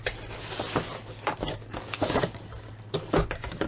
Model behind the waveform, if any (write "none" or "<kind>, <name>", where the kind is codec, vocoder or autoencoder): none